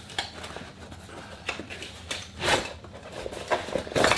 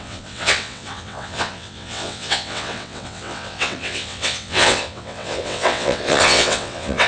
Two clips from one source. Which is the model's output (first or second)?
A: second